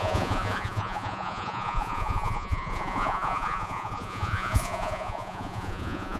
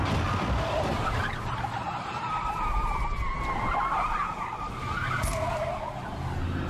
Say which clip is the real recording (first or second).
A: second